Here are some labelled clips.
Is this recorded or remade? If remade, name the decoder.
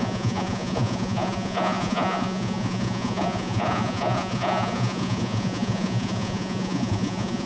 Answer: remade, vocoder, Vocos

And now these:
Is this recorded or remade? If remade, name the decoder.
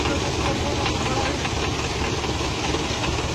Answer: recorded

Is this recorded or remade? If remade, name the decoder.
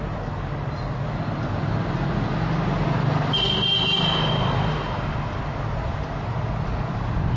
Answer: recorded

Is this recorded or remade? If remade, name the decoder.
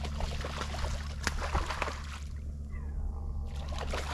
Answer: recorded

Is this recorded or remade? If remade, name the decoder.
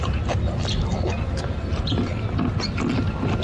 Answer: recorded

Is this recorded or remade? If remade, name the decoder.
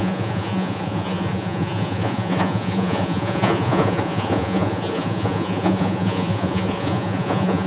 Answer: remade, vocoder, Vocos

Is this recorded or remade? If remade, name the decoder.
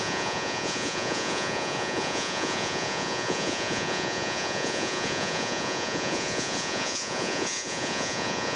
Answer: remade, vocoder, Vocos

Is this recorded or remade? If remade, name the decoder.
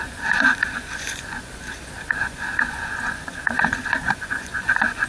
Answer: remade, vocoder, Vocos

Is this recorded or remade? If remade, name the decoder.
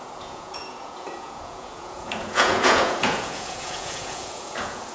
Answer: remade, vocoder, Vocos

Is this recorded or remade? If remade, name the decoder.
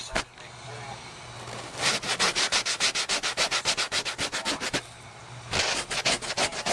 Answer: recorded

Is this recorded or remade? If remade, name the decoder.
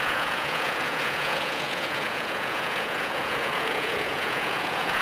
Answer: remade, vocoder, Vocos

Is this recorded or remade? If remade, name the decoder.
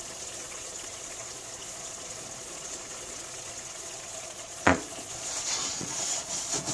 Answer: remade, vocoder, Vocos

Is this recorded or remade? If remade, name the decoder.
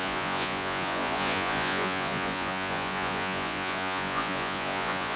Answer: remade, vocoder, Vocos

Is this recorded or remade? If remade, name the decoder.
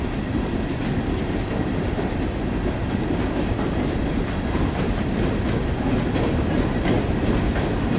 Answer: recorded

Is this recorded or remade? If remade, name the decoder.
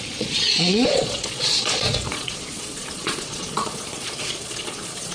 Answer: remade, vocoder, Vocos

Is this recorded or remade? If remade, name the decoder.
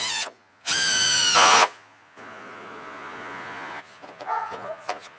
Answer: remade, vocoder, Vocos